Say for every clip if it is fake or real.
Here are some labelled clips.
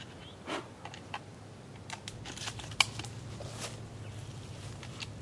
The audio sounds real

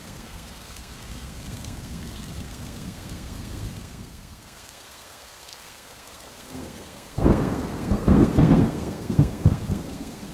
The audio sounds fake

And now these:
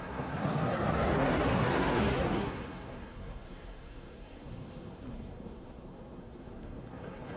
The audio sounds fake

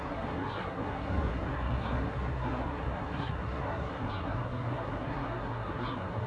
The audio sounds fake